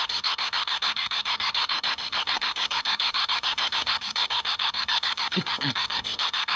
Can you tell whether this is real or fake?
fake